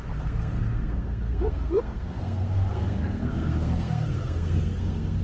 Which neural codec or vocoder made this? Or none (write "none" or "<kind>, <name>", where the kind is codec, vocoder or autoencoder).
codec, SNAC